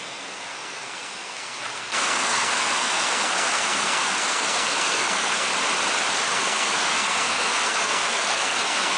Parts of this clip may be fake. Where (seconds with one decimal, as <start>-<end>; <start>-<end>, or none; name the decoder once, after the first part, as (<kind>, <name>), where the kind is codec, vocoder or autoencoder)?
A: 0.0-5.5 (codec, SNAC); 6.3-9.0

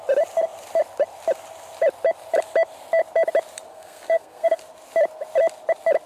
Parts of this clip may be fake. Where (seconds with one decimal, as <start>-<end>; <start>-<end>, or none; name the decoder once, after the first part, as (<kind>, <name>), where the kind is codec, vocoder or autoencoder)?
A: 3.7-4.6 (codec, SNAC)

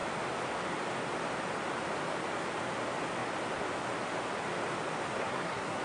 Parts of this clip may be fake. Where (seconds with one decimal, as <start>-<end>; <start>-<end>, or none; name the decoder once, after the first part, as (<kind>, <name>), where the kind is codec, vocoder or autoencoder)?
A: 5.2-5.8 (codec, SNAC)

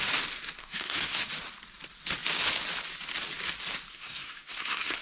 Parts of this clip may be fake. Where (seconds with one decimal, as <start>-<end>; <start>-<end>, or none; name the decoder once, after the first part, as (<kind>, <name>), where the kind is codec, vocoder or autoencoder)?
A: 0.6-1.3 (codec, SNAC); 3.9-5.0

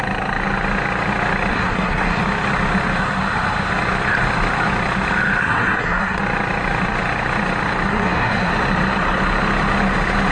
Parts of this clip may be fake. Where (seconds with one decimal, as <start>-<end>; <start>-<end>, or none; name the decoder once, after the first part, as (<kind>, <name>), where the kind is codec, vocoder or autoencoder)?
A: 1.5-2.2 (codec, SNAC); 5.4-6.2; 7.9-8.5